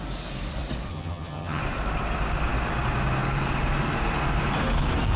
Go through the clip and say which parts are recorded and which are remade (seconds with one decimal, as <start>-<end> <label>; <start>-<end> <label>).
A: 0.0-0.9 recorded; 0.9-1.6 remade; 1.6-5.2 recorded